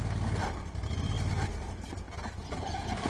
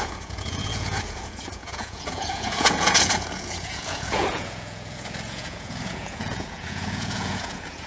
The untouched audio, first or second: first